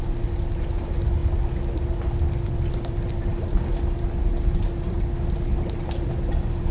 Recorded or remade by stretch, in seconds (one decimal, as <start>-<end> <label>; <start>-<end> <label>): 0.0-6.7 recorded